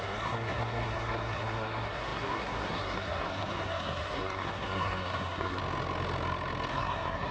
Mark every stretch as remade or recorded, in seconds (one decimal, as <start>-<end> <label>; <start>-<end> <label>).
0.0-5.6 remade; 5.6-6.7 recorded; 6.7-7.3 remade